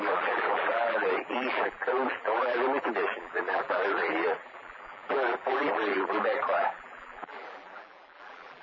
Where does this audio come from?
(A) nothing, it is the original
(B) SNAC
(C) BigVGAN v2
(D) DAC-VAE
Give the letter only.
C